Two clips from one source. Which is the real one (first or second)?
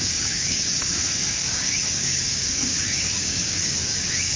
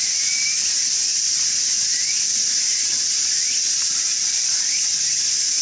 second